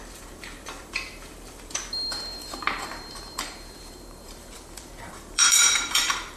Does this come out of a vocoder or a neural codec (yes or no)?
yes